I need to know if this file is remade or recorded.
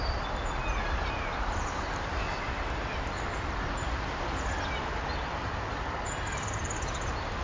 recorded